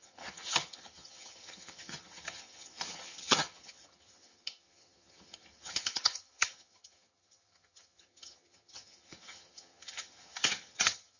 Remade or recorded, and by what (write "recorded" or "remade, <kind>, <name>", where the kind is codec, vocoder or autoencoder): remade, vocoder, HiFi-GAN